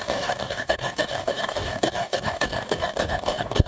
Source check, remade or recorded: remade